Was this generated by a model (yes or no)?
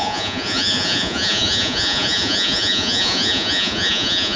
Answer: yes